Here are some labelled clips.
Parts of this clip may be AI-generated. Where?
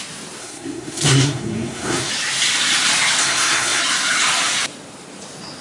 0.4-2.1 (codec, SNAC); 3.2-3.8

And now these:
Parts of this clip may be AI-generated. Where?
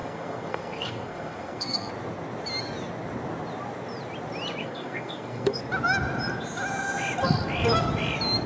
0.0-1.9 (codec, SNAC); 4.6-5.6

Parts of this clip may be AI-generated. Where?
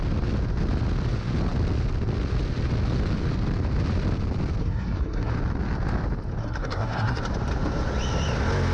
4.6-5.3 (codec, SNAC); 6.4-7.2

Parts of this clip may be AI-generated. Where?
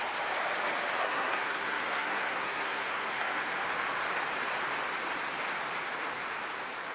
1.0-3.6 (codec, SNAC)